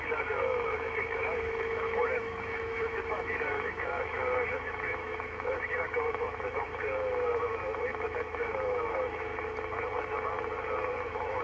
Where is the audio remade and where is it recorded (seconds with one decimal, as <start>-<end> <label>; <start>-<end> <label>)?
0.0-9.3 remade; 9.3-11.0 recorded; 11.0-11.4 remade